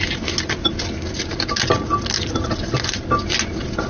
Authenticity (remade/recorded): recorded